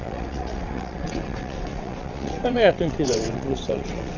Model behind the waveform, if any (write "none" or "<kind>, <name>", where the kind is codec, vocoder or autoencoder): vocoder, WaveNeXt